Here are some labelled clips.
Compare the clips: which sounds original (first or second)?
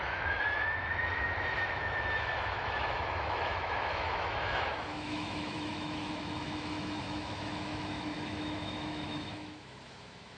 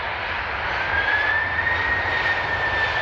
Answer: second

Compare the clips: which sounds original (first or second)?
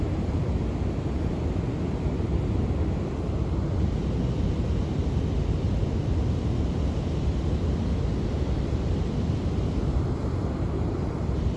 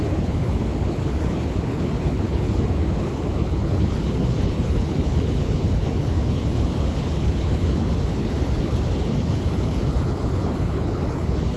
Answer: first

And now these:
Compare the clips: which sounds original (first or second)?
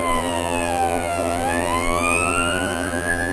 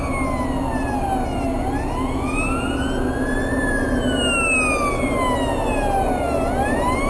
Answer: second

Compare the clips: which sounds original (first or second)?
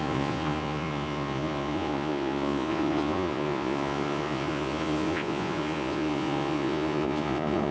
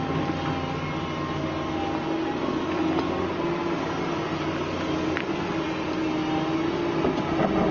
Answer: second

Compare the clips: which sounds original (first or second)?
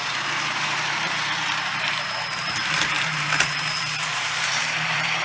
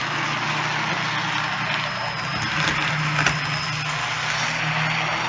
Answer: second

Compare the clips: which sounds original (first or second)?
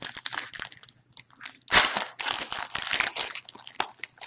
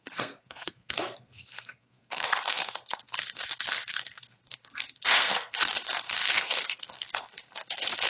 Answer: first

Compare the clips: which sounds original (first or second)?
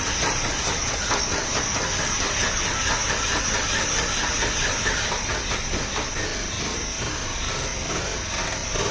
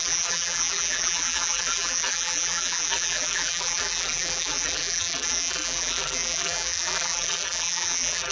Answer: first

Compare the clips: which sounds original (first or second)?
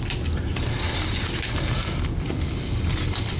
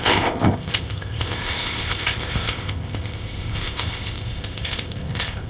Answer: first